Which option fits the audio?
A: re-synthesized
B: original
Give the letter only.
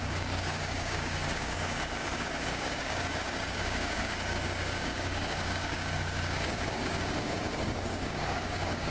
A